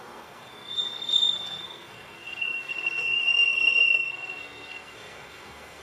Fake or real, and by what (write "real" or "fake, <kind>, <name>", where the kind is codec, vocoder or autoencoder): fake, codec, SNAC